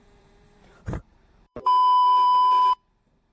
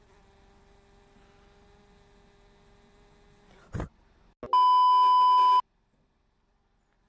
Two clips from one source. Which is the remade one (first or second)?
first